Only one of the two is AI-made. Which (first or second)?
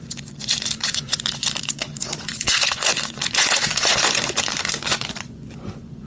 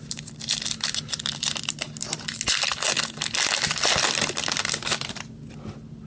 first